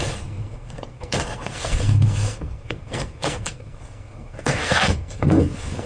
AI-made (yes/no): yes